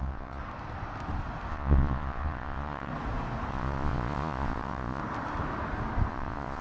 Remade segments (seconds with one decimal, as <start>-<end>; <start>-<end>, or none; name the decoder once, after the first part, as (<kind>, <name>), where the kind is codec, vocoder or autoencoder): 0.0-0.4 (vocoder, Vocos); 1.5-2.9; 3.5-5.0; 6.1-6.6